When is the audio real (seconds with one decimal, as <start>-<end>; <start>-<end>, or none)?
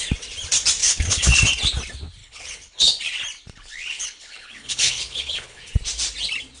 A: 0.0-0.8; 1.4-2.2; 3.0-3.5; 5.6-6.6